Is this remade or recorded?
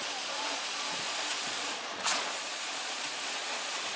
remade